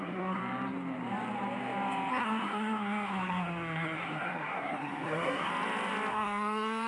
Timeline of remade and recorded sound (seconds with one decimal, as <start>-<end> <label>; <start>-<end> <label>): 0.0-0.4 remade; 0.4-2.1 recorded; 2.1-5.5 remade; 5.5-6.1 recorded; 6.1-6.9 remade